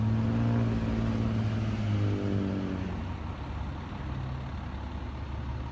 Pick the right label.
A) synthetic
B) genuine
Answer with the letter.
B